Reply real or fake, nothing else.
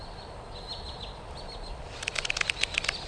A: real